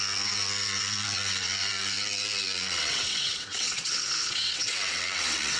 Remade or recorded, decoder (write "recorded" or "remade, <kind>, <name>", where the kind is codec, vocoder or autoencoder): remade, vocoder, WaveNeXt